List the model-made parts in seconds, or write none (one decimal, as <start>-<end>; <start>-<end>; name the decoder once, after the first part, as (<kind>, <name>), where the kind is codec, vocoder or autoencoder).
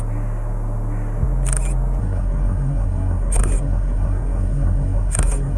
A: 2.0-5.6 (codec, SNAC)